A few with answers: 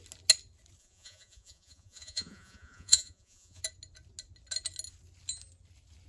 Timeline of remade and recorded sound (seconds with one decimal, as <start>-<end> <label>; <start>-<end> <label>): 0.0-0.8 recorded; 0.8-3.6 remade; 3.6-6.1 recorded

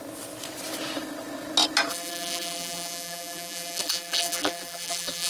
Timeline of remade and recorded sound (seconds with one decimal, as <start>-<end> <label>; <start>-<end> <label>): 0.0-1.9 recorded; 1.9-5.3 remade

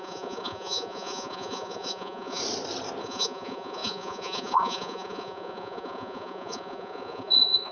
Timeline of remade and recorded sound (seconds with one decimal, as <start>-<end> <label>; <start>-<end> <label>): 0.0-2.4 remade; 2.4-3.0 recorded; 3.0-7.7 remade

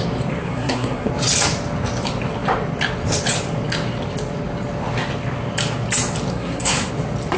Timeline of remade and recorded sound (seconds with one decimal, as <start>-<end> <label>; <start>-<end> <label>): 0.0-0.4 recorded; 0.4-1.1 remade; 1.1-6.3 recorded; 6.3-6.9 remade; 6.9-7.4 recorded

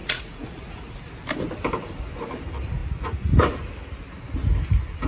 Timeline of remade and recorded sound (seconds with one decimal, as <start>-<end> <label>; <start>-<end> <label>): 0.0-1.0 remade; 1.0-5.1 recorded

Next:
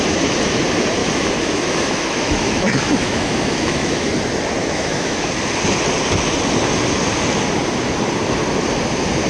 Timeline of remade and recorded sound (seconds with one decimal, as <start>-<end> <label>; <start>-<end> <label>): 0.0-1.0 recorded; 1.0-4.1 remade; 4.1-4.6 recorded; 4.6-5.3 remade; 5.3-9.3 recorded

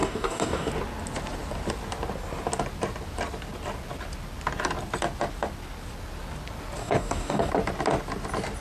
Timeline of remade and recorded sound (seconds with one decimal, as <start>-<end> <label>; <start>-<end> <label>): 0.0-0.7 remade; 0.7-6.8 recorded; 6.8-7.5 remade; 7.5-8.6 recorded